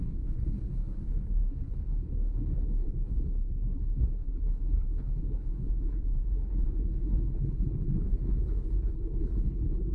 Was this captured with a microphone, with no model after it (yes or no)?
no